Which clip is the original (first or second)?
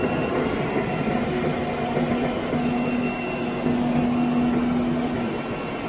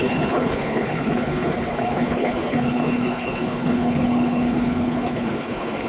first